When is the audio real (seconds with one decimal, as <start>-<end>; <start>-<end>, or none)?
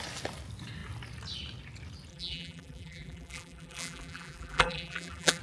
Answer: 0.0-2.1